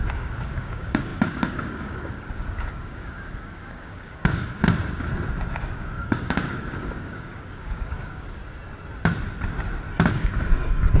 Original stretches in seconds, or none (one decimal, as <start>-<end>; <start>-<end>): 4.6-5.5; 8.4-10.1